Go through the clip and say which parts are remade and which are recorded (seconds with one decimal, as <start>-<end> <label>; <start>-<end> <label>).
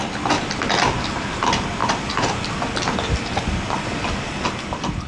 0.0-5.1 recorded